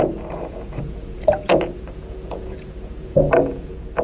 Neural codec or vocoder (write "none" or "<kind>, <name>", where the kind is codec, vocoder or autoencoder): vocoder, Vocos